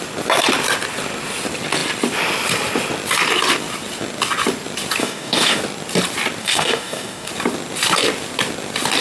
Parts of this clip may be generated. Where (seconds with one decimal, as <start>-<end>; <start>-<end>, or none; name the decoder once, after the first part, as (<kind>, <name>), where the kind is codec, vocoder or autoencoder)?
5.0-5.6 (codec, DAC); 6.4-7.3